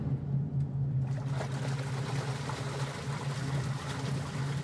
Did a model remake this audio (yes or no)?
no